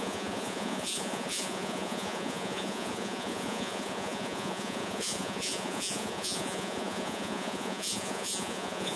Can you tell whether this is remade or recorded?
remade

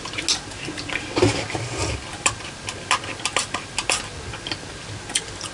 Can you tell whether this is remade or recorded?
recorded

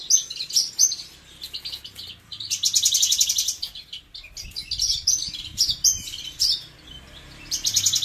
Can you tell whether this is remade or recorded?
recorded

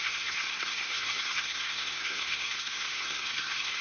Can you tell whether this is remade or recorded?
remade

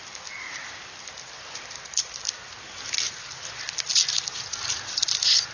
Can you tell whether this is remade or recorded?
recorded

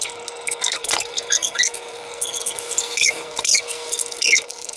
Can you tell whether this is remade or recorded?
remade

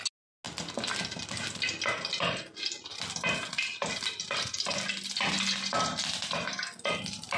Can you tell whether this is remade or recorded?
recorded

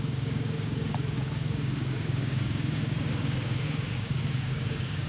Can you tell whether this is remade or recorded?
remade